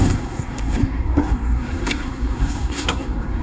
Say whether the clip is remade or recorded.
remade